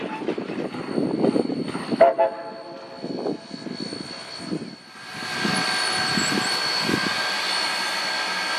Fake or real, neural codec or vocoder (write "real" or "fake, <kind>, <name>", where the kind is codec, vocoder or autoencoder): real